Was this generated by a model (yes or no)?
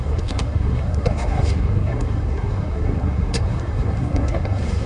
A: yes